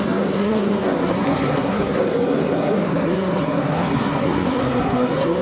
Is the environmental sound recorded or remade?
remade